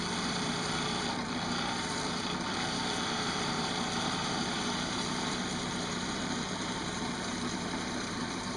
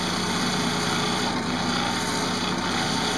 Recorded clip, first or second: second